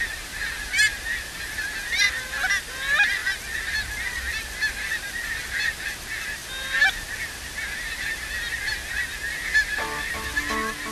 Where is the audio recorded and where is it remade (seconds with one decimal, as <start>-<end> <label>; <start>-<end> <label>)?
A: 0.0-10.9 recorded